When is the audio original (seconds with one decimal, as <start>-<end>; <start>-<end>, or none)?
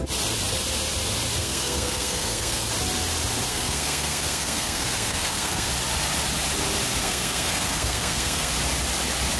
0.0-1.4; 2.7-3.5; 5.7-7.0; 8.5-9.4